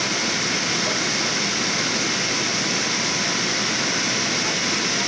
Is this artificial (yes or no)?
no